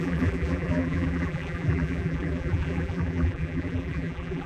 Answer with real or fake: fake